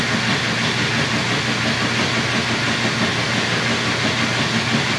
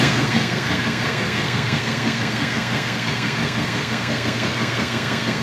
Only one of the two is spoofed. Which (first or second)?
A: second